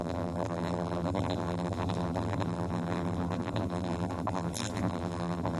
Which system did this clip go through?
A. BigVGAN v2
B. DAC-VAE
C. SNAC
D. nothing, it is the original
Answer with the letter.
A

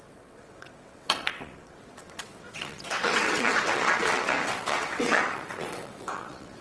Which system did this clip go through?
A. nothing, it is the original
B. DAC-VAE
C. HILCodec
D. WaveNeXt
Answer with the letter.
D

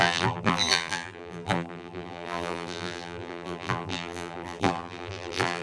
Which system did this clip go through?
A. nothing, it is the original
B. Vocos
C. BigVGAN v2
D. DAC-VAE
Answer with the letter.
C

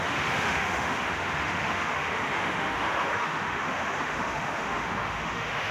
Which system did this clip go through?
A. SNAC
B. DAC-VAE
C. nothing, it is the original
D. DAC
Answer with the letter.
B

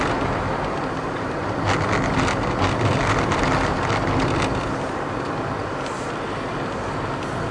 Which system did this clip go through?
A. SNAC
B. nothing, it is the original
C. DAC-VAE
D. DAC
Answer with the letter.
B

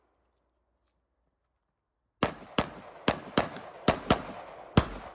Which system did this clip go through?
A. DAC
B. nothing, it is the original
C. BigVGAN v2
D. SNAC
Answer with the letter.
B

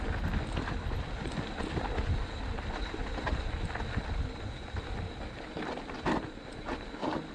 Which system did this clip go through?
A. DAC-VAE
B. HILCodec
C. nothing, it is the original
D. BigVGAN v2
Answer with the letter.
C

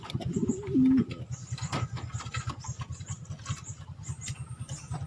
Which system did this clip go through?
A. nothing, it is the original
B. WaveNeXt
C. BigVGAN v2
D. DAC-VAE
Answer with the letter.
A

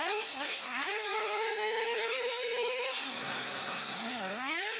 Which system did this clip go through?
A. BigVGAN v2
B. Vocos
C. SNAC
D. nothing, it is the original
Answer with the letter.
C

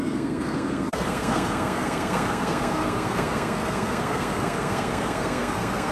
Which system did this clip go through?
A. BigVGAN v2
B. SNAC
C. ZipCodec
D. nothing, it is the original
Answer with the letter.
B